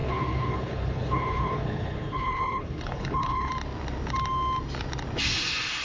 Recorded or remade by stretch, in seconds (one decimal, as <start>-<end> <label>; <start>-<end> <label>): 0.0-3.5 remade; 3.5-5.8 recorded